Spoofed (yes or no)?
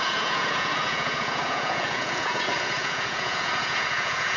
yes